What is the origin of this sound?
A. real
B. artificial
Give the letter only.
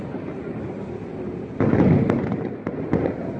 A